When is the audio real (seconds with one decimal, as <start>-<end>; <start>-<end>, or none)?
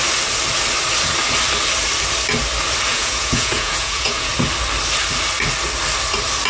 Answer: 0.0-2.9; 4.3-6.5